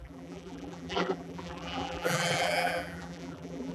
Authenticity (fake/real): fake